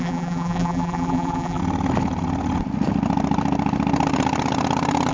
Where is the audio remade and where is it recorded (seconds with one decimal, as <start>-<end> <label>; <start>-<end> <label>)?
0.0-1.6 remade; 1.6-5.1 recorded